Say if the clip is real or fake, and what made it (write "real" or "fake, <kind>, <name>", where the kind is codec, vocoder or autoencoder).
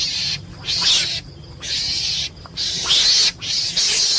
real